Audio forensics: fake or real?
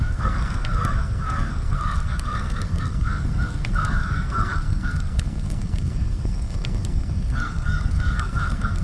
fake